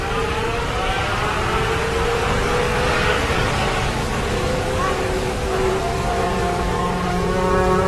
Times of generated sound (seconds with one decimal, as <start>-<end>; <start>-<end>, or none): 0.0-1.1; 2.2-7.9